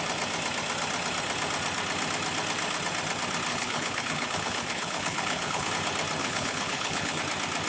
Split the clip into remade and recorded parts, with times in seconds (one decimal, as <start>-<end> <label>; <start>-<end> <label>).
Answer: 0.0-3.5 recorded; 3.5-5.7 remade; 5.7-6.2 recorded; 6.2-7.2 remade; 7.2-7.7 recorded